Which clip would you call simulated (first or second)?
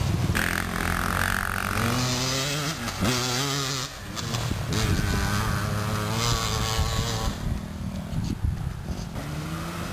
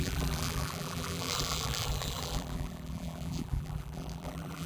second